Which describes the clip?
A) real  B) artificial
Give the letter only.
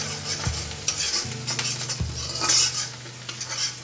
A